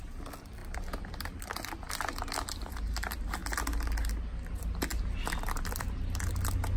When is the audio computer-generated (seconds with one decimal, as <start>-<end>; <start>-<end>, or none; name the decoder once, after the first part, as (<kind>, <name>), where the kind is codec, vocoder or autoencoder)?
none